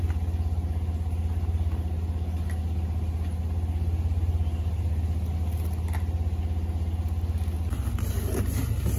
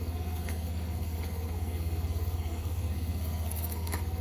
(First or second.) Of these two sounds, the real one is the first